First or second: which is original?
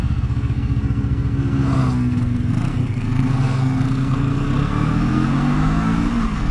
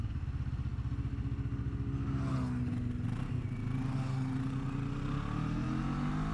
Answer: second